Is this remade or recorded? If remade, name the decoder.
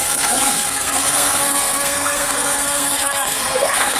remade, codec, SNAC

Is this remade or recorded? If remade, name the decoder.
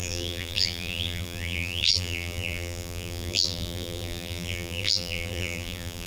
remade, vocoder, BigVGAN v2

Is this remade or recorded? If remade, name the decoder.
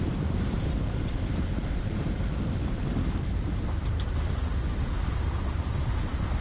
remade, vocoder, BigVGAN v2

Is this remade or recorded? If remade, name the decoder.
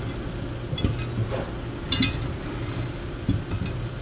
recorded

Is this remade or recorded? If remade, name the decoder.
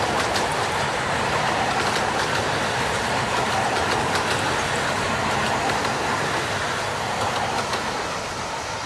recorded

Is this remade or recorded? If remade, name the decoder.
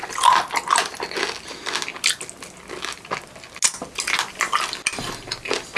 recorded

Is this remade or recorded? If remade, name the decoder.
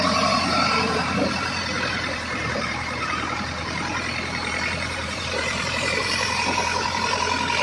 remade, vocoder, BigVGAN v2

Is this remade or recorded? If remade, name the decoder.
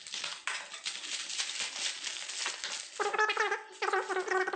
recorded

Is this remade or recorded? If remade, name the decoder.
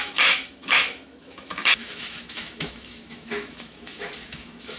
remade, autoencoder, DAC-VAE